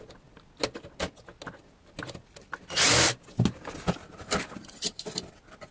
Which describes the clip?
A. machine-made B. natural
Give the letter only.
B